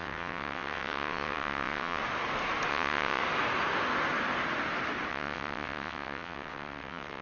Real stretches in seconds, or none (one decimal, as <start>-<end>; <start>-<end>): 2.0-2.7; 3.2-5.1